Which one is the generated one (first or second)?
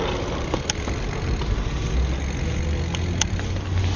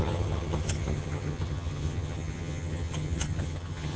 second